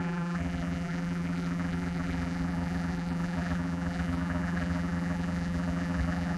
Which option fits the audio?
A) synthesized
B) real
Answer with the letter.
A